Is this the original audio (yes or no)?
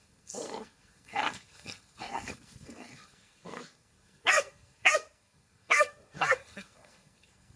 no